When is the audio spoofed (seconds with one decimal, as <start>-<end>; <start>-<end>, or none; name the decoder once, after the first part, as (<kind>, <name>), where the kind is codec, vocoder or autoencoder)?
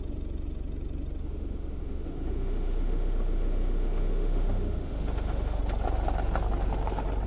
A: 1.2-5.6 (autoencoder, DAC-VAE)